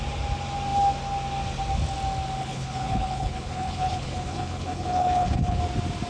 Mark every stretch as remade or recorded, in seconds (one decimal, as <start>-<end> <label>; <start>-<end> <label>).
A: 0.0-2.4 recorded; 2.4-5.6 remade; 5.6-6.1 recorded